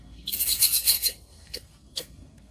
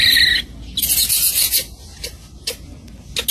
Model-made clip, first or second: first